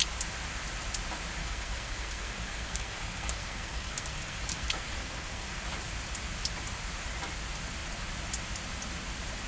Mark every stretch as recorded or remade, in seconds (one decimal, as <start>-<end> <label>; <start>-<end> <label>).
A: 0.0-1.4 recorded; 1.4-5.6 remade; 5.6-9.5 recorded